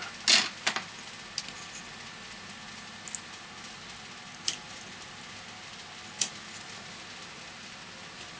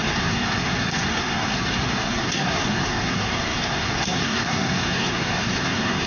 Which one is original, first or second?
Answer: first